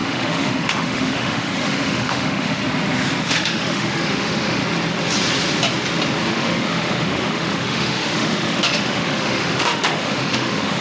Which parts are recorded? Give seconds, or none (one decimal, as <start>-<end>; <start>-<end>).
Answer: 2.6-3.2; 4.6-6.3